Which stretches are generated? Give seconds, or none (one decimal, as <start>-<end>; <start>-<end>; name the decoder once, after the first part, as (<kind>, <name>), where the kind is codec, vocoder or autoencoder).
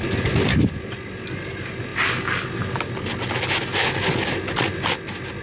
none